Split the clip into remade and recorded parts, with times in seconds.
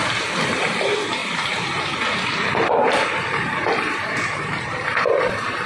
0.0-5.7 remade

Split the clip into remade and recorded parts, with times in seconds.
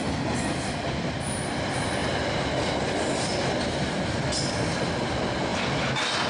0.0-6.3 recorded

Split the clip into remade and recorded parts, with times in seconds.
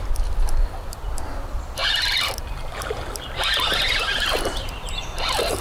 0.0-1.8 recorded; 1.8-5.6 remade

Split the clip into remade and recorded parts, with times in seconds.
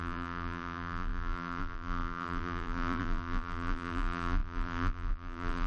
0.0-5.7 remade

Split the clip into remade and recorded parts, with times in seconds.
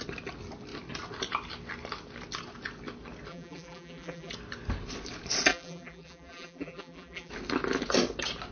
0.0-3.3 recorded; 3.3-4.3 remade; 4.3-5.5 recorded; 5.5-7.3 remade; 7.3-8.5 recorded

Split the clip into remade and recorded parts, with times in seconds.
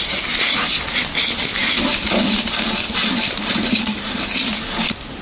0.0-3.0 recorded; 3.0-4.3 remade; 4.3-5.2 recorded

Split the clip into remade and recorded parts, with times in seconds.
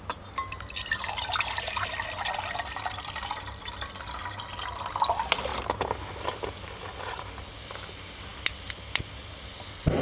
0.0-8.3 recorded; 8.3-9.1 remade; 9.1-10.0 recorded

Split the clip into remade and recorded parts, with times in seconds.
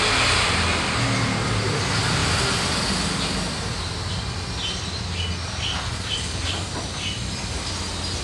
0.0-2.2 recorded; 2.2-2.8 remade; 2.8-8.2 recorded